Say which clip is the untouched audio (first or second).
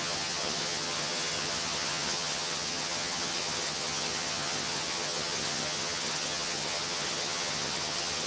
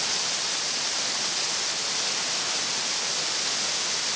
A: second